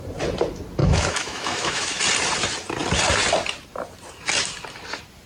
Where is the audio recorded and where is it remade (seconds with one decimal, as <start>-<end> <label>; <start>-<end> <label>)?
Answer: 0.0-0.8 recorded; 0.8-2.0 remade; 2.0-5.3 recorded